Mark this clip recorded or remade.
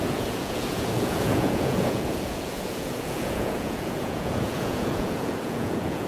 remade